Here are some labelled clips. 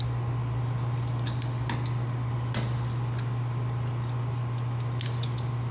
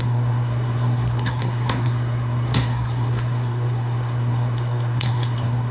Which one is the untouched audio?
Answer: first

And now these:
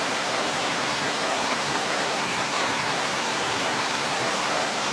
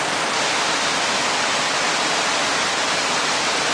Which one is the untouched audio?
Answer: second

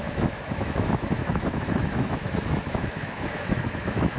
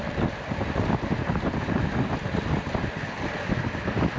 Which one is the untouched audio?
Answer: second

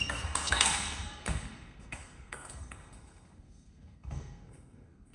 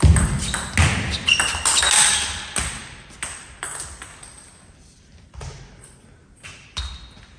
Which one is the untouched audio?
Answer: second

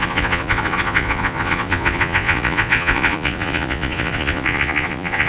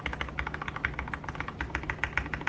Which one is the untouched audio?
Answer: second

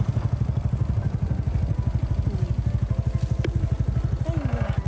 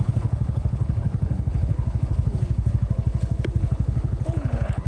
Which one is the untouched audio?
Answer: first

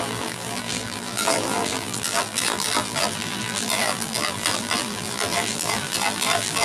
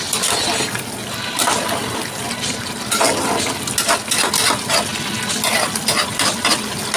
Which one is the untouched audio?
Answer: second